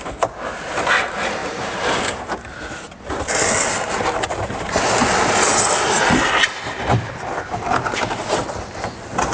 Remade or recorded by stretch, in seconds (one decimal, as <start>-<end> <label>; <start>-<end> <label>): 0.0-1.4 recorded; 1.4-2.6 remade; 2.6-9.3 recorded